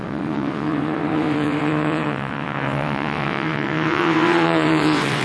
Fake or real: fake